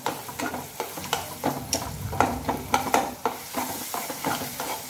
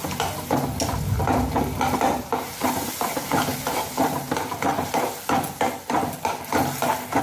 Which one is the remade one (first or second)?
first